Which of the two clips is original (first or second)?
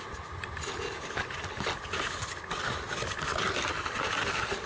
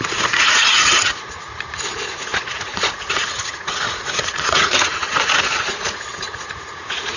first